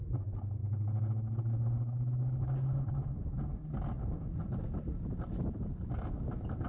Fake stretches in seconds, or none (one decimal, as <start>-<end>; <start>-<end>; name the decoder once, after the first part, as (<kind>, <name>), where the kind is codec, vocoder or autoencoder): none